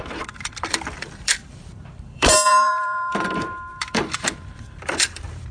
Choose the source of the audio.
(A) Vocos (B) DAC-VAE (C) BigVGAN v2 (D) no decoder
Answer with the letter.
C